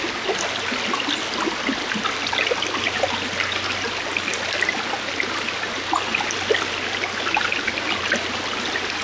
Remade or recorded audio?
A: recorded